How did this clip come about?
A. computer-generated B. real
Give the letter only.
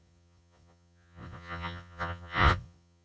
A